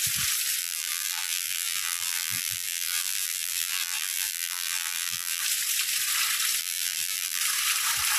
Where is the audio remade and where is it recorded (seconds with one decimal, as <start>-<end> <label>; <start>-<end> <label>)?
0.0-0.6 recorded; 0.6-5.4 remade; 5.4-6.6 recorded; 6.6-7.4 remade; 7.4-8.2 recorded